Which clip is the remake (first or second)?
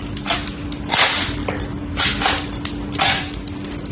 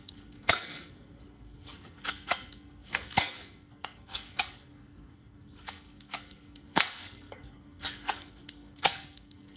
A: second